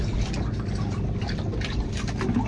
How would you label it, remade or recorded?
recorded